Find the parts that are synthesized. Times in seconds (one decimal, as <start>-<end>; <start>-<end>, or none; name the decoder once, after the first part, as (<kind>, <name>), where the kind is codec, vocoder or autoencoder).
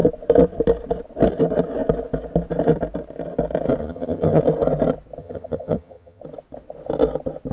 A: 3.8-4.4 (vocoder, HiFi-GAN); 5.2-6.2